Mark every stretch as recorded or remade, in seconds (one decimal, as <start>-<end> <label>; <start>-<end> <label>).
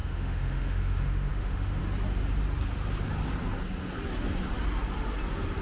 0.0-1.8 remade; 1.8-5.6 recorded